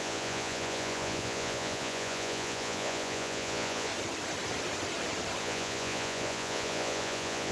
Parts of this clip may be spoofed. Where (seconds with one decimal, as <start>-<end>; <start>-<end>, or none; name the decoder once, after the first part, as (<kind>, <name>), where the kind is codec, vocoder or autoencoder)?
0.0-3.9 (vocoder, Vocos); 5.4-7.5